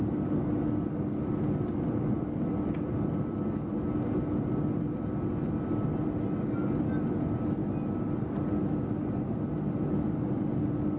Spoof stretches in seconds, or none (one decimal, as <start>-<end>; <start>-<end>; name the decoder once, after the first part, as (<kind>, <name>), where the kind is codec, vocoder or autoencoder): none